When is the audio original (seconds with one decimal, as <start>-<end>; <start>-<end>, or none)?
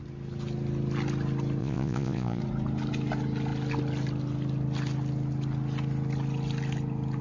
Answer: 0.0-1.6; 2.4-7.2